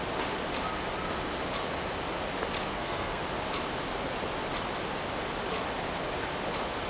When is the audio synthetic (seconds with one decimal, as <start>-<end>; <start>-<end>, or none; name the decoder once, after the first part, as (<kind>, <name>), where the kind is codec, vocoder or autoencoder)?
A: 2.6-3.2 (codec, SNAC)